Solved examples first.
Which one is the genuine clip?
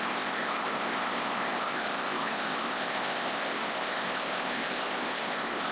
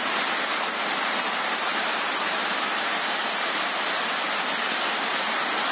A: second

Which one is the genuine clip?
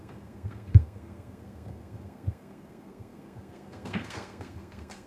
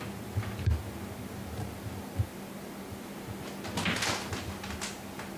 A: second